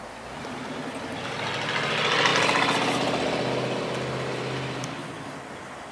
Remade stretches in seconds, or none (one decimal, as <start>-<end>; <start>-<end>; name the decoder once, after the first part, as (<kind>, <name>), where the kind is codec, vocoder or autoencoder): none